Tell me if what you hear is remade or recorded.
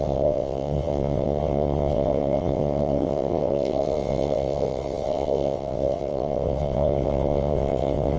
remade